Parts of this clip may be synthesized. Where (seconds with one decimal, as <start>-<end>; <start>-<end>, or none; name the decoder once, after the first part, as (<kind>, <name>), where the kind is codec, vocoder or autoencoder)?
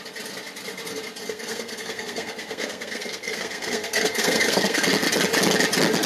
1.2-4.9 (codec, SNAC)